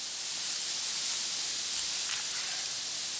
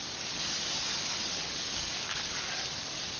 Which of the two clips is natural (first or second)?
first